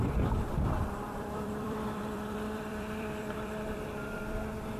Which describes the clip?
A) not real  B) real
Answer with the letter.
A